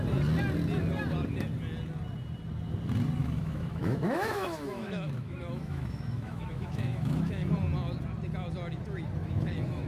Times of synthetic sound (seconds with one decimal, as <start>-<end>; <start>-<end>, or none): 3.2-7.5; 9.2-9.9